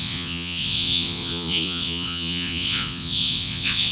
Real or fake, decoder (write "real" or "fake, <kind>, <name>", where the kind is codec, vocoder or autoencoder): fake, vocoder, Vocos